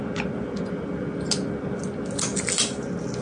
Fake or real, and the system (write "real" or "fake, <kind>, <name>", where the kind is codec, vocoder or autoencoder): real